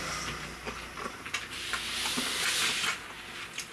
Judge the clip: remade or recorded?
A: recorded